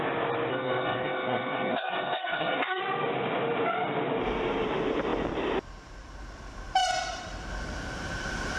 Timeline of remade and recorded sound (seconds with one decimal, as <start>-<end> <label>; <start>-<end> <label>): 0.0-0.5 recorded; 0.5-2.8 remade; 2.8-8.6 recorded